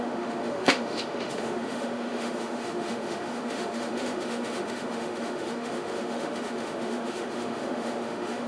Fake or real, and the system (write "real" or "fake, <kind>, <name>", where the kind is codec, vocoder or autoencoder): fake, autoencoder, DAC-VAE